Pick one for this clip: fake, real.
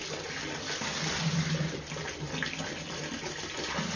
real